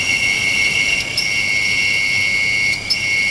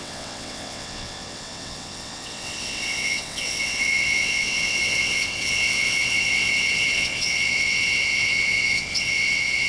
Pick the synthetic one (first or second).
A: second